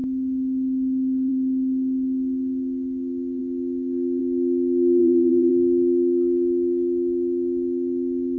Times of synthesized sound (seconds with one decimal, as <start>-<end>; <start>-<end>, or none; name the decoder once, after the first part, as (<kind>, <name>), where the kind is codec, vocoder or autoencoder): 5.0-5.5 (vocoder, BigVGAN v2)